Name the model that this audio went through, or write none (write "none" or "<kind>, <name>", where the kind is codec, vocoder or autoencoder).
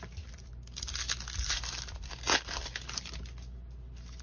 none